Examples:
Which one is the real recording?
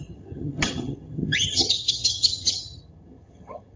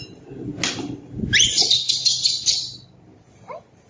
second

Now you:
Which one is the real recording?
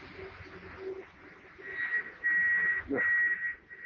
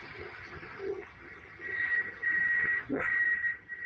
first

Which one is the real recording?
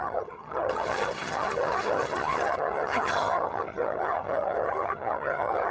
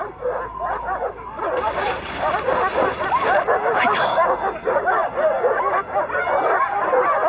second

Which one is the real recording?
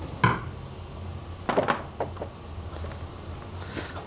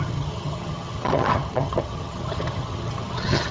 first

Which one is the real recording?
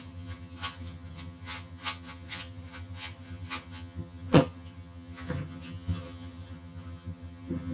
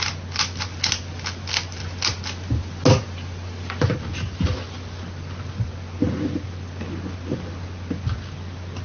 second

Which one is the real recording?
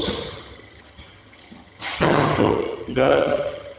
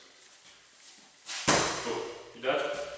second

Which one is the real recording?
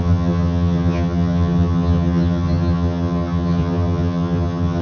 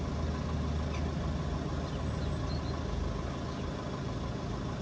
second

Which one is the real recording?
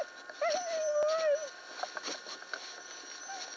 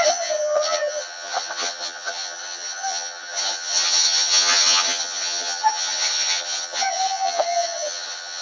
first